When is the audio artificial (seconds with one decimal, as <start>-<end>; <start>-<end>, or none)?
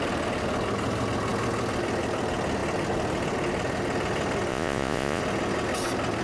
4.5-5.2